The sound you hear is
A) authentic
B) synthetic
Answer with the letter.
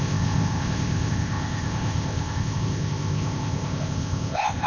B